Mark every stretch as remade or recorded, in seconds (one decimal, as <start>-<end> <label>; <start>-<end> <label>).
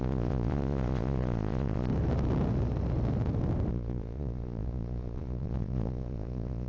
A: 0.0-1.9 remade; 1.9-3.7 recorded; 3.7-6.7 remade